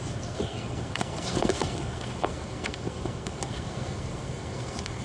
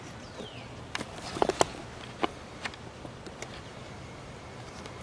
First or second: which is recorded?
second